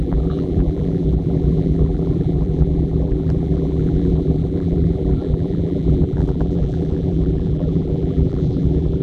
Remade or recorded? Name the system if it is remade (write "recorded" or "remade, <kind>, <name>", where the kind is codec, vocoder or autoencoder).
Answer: remade, vocoder, BigVGAN v2